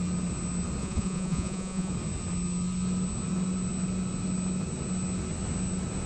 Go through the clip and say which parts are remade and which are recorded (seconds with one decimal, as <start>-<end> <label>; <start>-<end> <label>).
0.0-0.8 recorded; 0.8-1.9 remade; 1.9-6.1 recorded

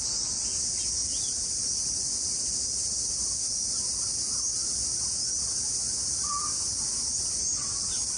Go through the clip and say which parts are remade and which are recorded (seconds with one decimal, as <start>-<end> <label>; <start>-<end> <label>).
0.0-8.2 recorded